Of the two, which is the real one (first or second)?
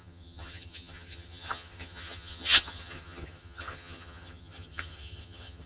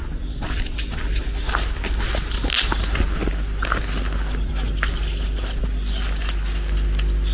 second